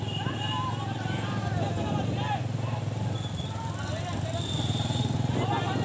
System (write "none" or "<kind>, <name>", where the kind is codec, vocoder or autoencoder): none